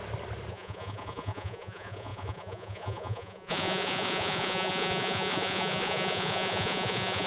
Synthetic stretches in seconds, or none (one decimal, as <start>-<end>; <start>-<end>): 0.5-7.3